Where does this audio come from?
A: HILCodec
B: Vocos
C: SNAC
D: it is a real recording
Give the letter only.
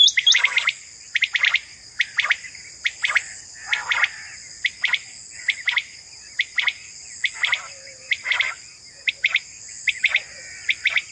D